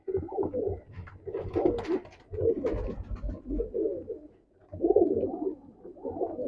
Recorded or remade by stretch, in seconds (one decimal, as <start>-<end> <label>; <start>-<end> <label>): 0.0-6.5 recorded